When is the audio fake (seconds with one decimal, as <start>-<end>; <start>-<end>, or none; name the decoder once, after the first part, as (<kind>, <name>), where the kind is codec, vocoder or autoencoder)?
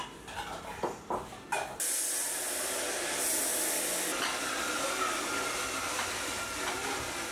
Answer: none